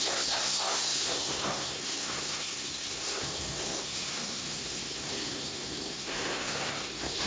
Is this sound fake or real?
fake